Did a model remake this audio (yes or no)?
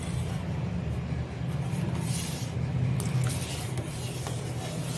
no